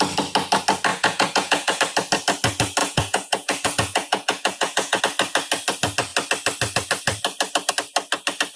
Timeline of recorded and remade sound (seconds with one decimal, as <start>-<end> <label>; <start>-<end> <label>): 0.0-0.9 recorded; 0.9-1.8 remade; 1.8-2.8 recorded; 2.8-5.0 remade; 5.0-8.6 recorded